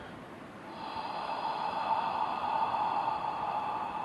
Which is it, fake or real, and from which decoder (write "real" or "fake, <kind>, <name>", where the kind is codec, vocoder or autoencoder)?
real